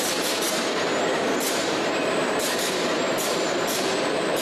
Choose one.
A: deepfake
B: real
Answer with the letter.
A